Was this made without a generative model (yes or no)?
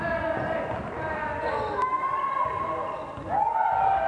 yes